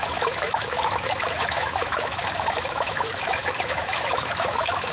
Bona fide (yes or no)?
no